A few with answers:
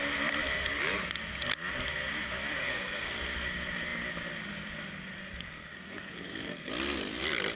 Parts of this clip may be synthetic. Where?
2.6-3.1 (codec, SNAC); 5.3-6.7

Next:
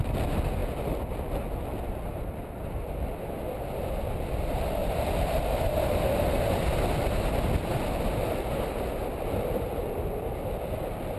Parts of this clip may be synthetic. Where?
none

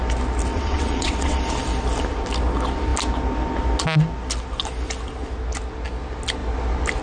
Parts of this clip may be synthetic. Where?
0.5-1.4 (vocoder, WaveNeXt)

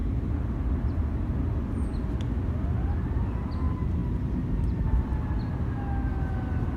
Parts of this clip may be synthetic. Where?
none